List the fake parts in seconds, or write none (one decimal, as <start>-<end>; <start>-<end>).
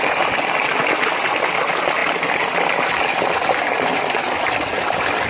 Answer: 2.0-4.2